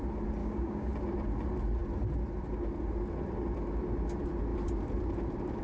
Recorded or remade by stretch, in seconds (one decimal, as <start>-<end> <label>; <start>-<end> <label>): 0.0-0.4 recorded; 0.4-0.9 remade; 0.9-5.6 recorded

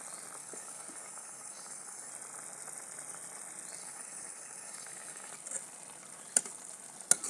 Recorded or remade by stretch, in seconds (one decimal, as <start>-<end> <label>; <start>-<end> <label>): 0.0-0.4 recorded; 0.4-2.1 remade; 2.1-3.8 recorded; 3.8-5.3 remade; 5.3-7.3 recorded

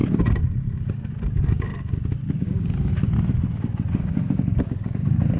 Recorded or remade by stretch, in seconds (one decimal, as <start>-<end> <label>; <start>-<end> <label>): 0.0-0.9 recorded; 0.9-1.7 remade; 1.7-2.4 recorded; 2.4-2.9 remade; 2.9-3.9 recorded; 3.9-5.4 remade

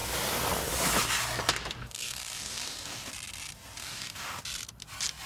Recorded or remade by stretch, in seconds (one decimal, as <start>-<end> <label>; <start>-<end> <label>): 0.0-1.8 recorded; 1.8-3.1 remade; 3.1-3.8 recorded; 3.8-4.4 remade; 4.4-5.3 recorded